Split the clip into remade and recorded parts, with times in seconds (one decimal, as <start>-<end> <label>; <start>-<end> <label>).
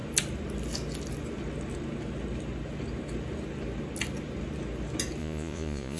0.0-5.2 recorded; 5.2-6.0 remade